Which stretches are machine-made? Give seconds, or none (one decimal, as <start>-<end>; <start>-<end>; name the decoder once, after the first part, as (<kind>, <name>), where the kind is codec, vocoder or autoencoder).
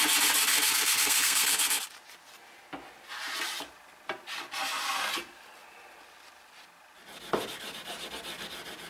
0.5-1.8 (codec, SNAC)